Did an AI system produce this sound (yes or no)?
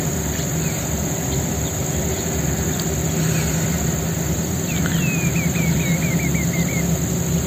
yes